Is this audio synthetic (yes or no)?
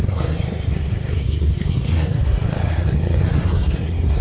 yes